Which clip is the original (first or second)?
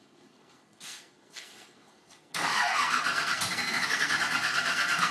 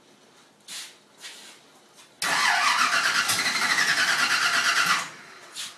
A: second